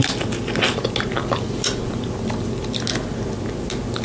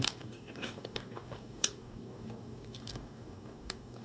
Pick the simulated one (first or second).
second